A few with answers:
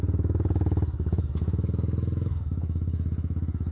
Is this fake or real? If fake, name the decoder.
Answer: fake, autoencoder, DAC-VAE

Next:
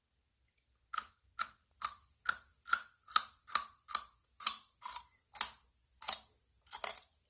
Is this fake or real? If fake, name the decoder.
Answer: real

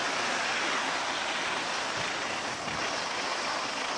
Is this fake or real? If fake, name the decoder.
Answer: real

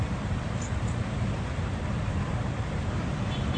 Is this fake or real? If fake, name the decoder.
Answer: fake, vocoder, BigVGAN v2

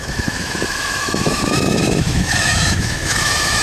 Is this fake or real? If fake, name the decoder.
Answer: fake, autoencoder, DAC-VAE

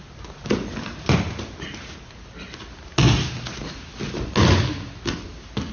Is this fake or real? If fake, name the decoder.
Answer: real